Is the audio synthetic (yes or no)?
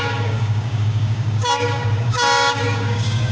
yes